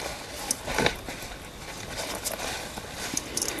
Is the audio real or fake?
real